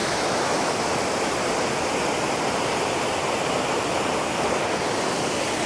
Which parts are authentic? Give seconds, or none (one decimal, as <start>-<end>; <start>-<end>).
0.7-5.7